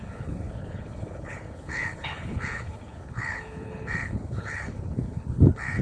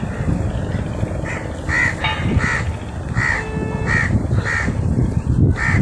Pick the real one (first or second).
second